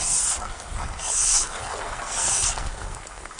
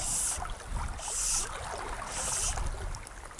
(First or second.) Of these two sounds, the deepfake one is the first